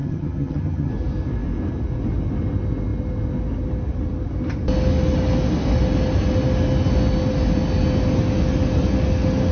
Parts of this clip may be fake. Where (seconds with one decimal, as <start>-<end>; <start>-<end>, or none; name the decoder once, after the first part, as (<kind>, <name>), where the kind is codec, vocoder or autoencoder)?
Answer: 0.0-0.9 (vocoder, HiFi-GAN)

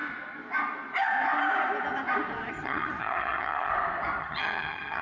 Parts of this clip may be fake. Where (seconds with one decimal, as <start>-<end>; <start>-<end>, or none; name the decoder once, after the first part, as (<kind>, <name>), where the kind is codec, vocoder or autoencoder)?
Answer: 2.5-3.7 (vocoder, HiFi-GAN); 4.2-5.0